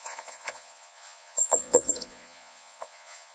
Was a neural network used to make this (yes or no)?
yes